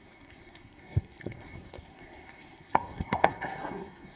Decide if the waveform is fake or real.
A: fake